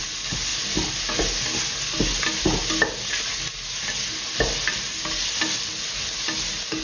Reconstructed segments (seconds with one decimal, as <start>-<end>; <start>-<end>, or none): none